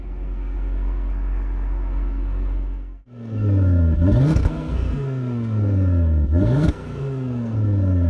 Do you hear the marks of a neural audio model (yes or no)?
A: yes